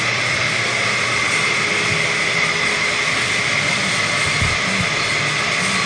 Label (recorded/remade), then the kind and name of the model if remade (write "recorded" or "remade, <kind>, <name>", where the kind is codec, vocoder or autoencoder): recorded